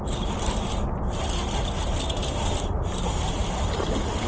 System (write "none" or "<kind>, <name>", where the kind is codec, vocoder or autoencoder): none